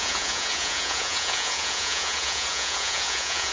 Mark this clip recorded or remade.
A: remade